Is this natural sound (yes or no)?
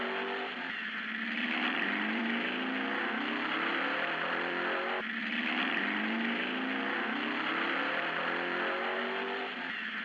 no